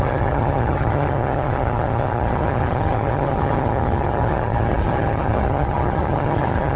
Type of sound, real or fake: fake